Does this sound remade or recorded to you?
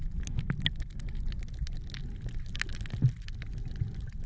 recorded